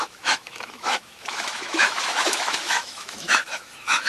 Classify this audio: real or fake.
fake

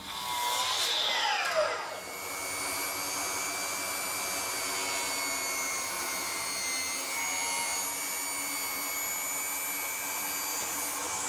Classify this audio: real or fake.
real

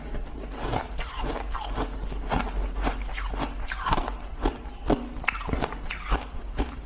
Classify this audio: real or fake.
real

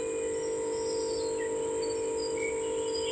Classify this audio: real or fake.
real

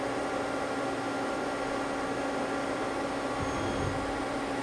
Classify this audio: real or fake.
real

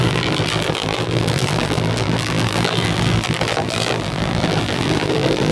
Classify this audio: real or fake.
fake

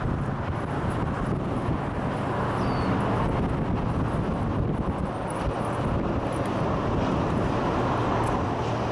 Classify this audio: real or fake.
real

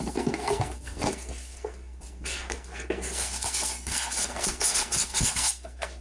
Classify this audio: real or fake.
fake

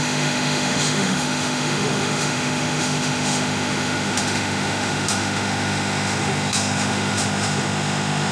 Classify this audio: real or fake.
fake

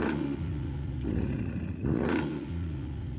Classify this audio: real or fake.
fake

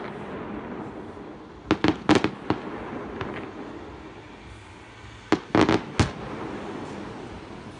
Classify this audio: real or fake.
real